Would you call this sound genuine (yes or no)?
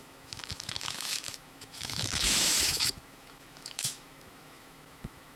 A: no